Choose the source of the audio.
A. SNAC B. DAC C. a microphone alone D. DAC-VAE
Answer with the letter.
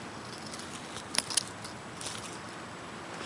C